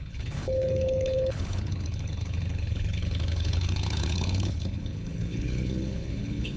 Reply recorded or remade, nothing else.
remade